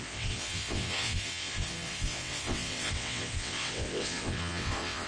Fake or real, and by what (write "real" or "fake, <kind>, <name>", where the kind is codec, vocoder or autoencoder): fake, vocoder, WaveNeXt